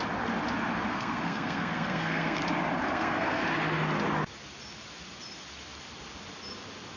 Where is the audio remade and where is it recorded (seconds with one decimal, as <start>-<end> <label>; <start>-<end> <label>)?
0.0-0.9 recorded; 0.9-2.4 remade; 2.4-2.9 recorded; 2.9-3.4 remade; 3.4-7.0 recorded